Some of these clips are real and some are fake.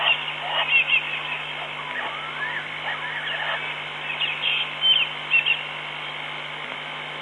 real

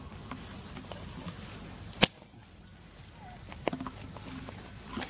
real